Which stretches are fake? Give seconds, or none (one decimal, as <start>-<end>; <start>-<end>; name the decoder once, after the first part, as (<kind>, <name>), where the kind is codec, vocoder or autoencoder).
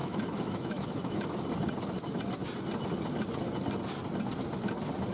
0.0-1.4 (autoencoder, DAC-VAE)